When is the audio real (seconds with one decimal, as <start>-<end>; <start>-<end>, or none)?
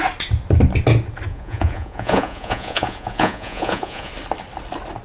0.0-1.3; 4.1-5.0